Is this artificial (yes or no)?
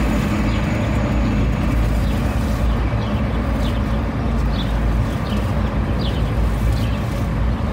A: no